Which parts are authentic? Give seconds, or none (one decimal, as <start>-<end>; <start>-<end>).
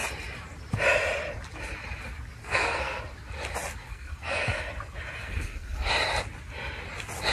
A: 0.0-2.4; 3.0-3.8; 4.7-5.2; 5.9-7.3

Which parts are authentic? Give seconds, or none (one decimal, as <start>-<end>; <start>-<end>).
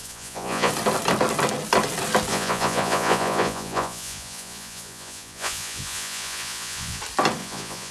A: 0.7-2.3; 7.0-7.4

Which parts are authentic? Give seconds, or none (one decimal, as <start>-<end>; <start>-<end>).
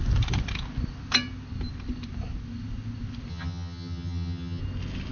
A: 0.0-3.3; 4.6-5.1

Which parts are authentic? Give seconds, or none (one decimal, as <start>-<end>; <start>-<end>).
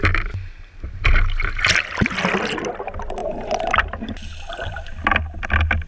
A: 0.0-5.9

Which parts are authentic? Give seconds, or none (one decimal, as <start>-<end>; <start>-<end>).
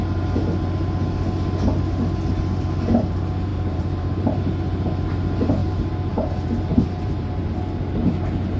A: 0.0-3.5; 4.4-5.6; 7.6-8.6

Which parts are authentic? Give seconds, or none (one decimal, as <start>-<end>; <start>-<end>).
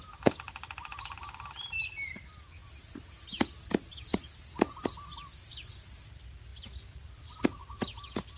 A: 0.0-8.4